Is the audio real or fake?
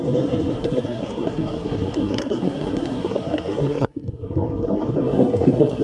fake